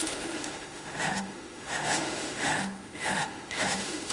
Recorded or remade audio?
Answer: remade